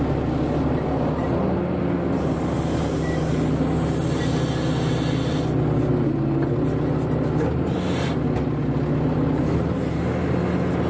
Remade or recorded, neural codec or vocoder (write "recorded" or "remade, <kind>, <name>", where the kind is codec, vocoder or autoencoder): recorded